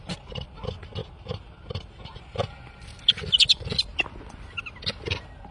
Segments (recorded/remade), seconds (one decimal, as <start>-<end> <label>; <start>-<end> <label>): 0.0-1.0 recorded; 1.0-2.2 remade; 2.2-5.5 recorded